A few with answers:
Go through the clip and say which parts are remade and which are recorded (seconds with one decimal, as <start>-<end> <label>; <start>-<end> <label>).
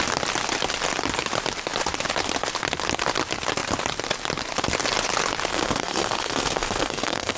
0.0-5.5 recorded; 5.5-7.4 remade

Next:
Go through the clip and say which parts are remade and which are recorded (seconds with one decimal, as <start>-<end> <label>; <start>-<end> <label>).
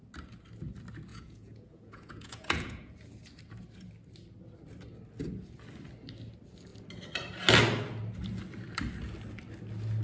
0.0-1.1 recorded; 1.1-2.9 remade; 2.9-10.0 recorded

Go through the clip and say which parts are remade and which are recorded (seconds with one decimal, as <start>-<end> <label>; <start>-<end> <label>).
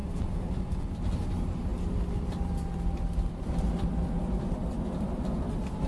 0.0-1.7 recorded; 1.7-3.9 remade; 3.9-5.9 recorded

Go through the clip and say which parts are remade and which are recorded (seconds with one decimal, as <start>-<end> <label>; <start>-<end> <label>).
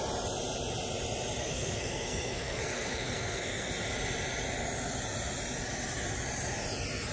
0.0-1.4 recorded; 1.4-3.7 remade; 3.7-7.1 recorded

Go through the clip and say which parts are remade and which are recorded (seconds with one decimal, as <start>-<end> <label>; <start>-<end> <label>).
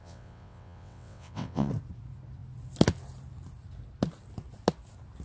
0.0-1.7 remade; 1.7-5.2 recorded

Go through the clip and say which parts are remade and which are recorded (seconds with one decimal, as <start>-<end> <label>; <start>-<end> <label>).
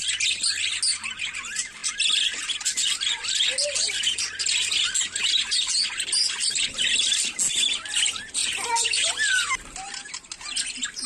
0.0-11.1 recorded